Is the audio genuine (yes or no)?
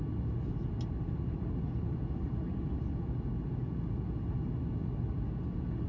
yes